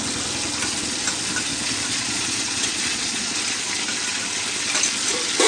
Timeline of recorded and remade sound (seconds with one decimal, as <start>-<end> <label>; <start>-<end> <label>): 0.0-1.5 recorded; 1.5-3.3 remade; 3.3-5.5 recorded